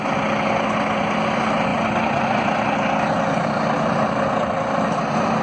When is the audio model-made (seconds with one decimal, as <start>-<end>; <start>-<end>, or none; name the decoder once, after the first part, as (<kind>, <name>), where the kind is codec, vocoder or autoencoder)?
none